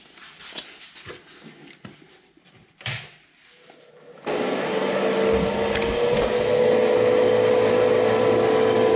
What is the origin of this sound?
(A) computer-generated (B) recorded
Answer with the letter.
B